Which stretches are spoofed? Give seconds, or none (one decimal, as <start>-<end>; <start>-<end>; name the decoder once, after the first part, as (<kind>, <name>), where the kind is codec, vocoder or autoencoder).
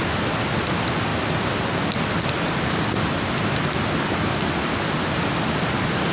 none